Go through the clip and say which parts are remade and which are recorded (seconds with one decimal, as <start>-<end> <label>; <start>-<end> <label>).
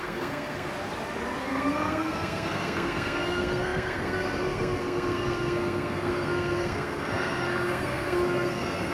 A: 0.0-0.7 remade; 0.7-1.4 recorded; 1.4-8.9 remade